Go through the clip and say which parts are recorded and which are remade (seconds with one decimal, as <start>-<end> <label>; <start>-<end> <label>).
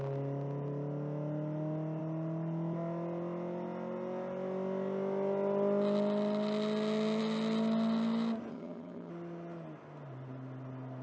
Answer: 0.0-8.5 recorded; 8.5-9.1 remade; 9.1-11.0 recorded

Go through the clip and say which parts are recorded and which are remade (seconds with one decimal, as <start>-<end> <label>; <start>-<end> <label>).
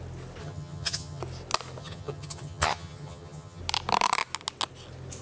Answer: 0.0-0.4 recorded; 0.4-1.2 remade; 1.2-1.8 recorded; 1.8-3.6 remade; 3.6-5.2 recorded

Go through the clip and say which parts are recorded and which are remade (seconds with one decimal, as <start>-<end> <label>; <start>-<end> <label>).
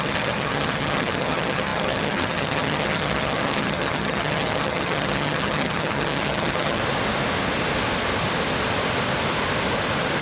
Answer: 0.0-6.8 remade; 6.8-10.2 recorded